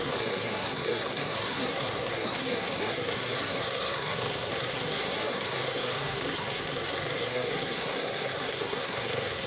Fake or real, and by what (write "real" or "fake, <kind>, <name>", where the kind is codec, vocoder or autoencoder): fake, codec, SNAC